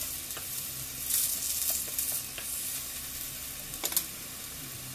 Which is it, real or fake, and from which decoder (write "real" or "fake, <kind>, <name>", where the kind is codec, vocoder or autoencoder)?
real